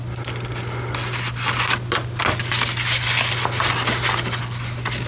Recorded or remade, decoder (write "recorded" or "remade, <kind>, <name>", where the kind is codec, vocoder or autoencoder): recorded